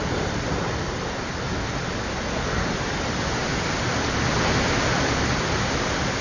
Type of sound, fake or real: real